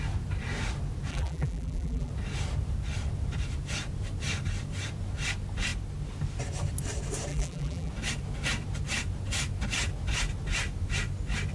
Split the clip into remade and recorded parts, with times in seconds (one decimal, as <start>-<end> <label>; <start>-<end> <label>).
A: 0.0-1.1 recorded; 1.1-2.1 remade; 2.1-7.3 recorded; 7.3-7.9 remade; 7.9-11.5 recorded